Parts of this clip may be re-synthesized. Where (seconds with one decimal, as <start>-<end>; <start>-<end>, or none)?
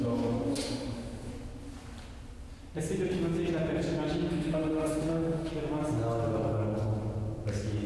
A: 0.5-1.3; 4.3-5.5